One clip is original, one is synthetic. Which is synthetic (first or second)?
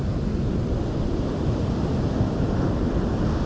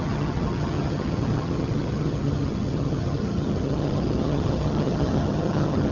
second